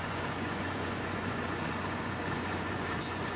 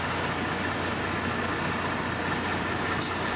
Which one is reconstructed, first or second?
first